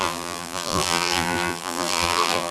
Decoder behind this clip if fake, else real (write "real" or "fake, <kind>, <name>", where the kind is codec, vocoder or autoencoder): fake, vocoder, BigVGAN v2